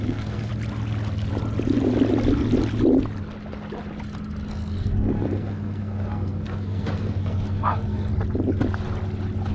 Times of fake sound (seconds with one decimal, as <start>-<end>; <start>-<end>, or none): 0.0-0.5; 4.5-8.1